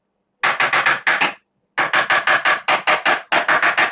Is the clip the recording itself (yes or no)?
yes